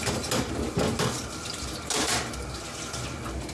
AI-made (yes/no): no